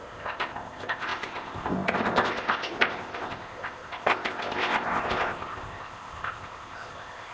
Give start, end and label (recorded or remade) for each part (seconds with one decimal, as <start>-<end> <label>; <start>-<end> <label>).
0.0-7.3 remade